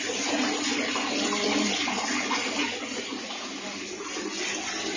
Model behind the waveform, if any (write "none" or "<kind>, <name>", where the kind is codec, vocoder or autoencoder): none